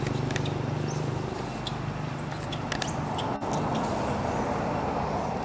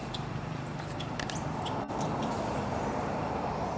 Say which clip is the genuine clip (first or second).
first